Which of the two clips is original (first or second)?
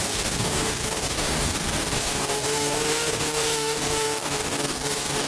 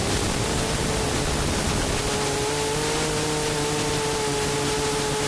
second